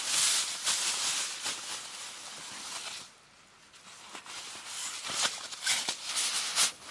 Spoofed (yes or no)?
no